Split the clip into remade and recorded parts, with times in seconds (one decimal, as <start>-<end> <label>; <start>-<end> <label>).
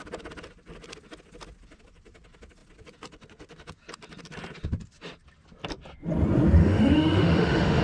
0.0-6.6 recorded; 6.6-7.8 remade